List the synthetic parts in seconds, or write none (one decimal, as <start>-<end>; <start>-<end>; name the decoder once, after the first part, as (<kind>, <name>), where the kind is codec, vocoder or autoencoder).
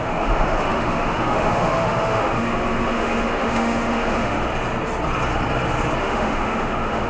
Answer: 0.0-4.5 (autoencoder, DAC-VAE); 6.0-7.1